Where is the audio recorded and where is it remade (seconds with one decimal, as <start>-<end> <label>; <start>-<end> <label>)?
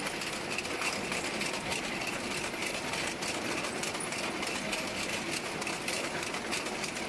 0.0-7.1 recorded